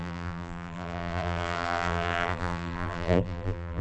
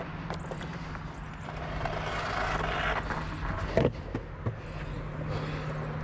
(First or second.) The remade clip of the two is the first